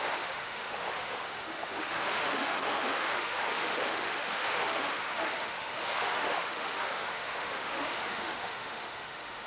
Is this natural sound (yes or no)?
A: no